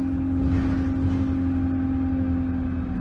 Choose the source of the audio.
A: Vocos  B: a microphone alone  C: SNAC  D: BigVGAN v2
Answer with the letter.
B